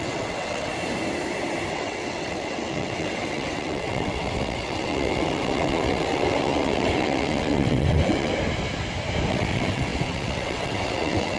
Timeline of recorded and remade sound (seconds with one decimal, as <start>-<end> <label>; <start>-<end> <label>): 0.0-0.7 remade; 0.7-1.7 recorded; 1.7-8.3 remade; 8.3-9.3 recorded; 9.3-11.4 remade